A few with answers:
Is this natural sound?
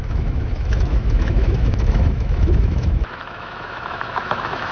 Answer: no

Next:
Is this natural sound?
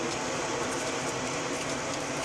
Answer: yes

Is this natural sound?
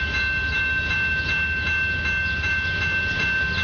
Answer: yes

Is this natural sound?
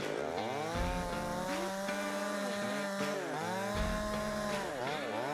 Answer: yes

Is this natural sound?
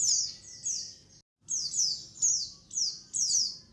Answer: yes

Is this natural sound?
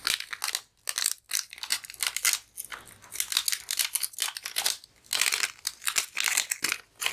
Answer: yes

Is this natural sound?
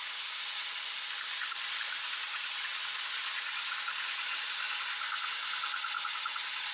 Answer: yes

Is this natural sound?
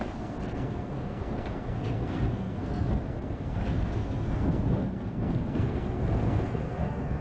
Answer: no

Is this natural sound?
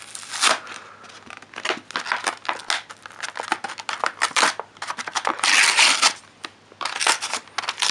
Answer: yes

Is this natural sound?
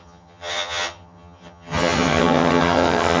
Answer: no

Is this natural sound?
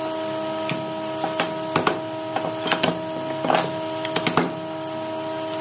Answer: yes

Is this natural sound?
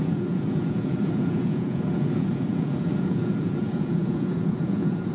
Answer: no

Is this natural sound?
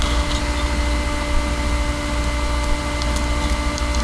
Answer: yes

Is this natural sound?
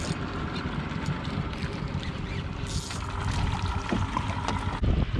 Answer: no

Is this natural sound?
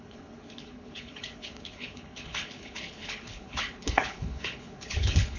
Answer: no